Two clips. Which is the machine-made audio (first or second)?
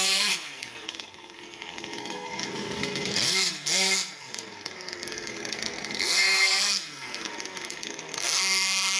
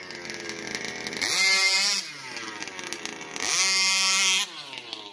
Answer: first